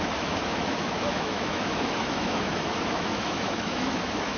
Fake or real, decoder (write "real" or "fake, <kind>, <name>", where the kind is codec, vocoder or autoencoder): fake, autoencoder, DAC-VAE